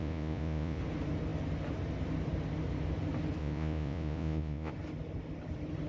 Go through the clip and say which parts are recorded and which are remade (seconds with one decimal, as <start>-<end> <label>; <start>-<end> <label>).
0.0-0.8 remade; 0.8-3.4 recorded; 3.4-4.7 remade; 4.7-5.9 recorded